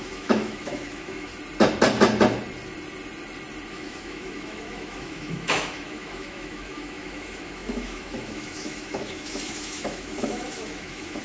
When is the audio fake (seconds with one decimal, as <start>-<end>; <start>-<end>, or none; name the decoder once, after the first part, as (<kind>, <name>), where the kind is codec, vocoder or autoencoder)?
0.0-1.3 (autoencoder, DAC-VAE); 3.7-11.2